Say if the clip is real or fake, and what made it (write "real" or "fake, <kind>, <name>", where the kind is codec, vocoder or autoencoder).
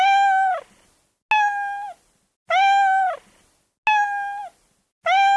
real